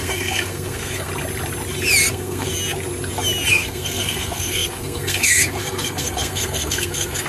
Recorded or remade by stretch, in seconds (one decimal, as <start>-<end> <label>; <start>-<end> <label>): 0.0-1.1 remade; 1.1-2.1 recorded; 2.1-2.5 remade; 2.5-3.5 recorded; 3.5-7.3 remade